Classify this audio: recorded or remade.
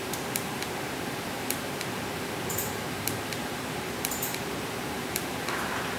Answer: remade